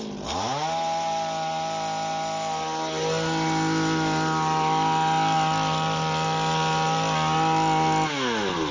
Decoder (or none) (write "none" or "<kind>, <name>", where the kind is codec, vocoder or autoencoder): none